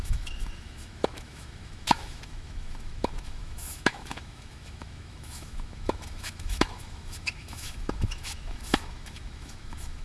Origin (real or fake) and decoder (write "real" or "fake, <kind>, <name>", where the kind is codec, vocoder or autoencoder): fake, autoencoder, DAC-VAE